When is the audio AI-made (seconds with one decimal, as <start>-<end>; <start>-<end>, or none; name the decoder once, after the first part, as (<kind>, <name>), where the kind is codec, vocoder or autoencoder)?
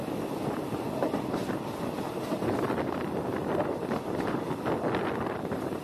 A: none